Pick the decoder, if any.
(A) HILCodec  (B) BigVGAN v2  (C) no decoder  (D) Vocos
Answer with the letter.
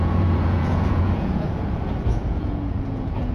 D